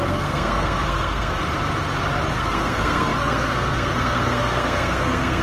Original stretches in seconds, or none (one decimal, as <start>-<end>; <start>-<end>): 1.4-2.3